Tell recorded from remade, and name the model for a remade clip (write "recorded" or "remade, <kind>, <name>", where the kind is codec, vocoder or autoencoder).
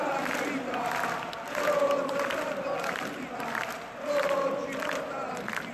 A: recorded